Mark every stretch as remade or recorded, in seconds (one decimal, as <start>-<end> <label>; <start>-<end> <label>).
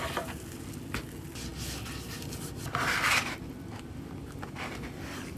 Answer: 0.0-5.4 recorded